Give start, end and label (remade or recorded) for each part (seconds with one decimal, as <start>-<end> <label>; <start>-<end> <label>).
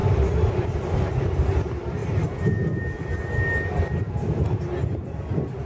0.0-0.5 remade; 0.5-5.7 recorded